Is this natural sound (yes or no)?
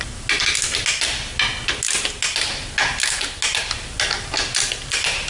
yes